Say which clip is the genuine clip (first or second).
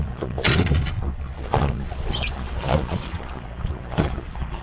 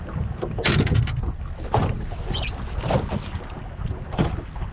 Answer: second